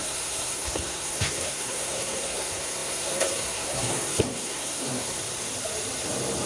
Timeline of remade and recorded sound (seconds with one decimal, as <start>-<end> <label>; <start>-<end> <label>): 0.0-5.2 remade; 5.2-6.5 recorded